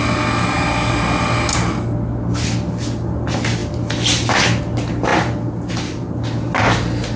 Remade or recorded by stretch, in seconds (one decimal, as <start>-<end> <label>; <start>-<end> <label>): 0.0-7.2 recorded